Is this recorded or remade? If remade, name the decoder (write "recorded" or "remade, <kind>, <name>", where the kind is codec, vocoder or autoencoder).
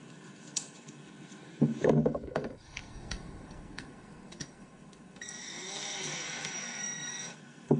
remade, codec, SNAC